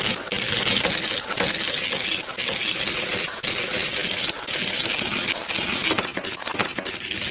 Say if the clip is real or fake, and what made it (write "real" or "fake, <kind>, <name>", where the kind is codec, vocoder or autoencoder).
real